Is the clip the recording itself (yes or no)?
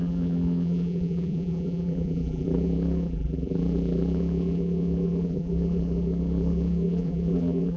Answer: no